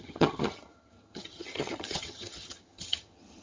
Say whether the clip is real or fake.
fake